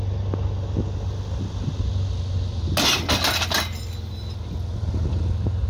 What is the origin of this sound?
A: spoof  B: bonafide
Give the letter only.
B